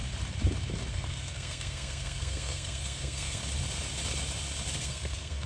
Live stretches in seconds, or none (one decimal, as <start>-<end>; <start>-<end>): 0.0-0.9; 3.4-4.8